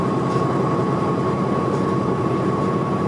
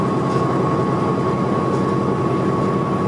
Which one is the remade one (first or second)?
first